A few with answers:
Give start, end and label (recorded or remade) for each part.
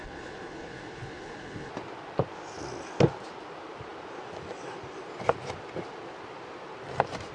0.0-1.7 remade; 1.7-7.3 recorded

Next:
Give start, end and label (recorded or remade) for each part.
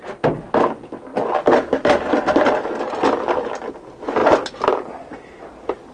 0.0-5.9 recorded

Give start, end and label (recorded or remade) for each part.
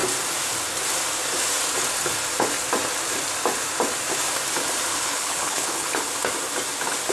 0.0-4.9 recorded; 4.9-6.0 remade; 6.0-7.1 recorded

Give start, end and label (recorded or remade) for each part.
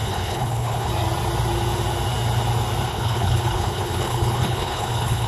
0.0-0.9 remade; 0.9-2.9 recorded; 2.9-5.3 remade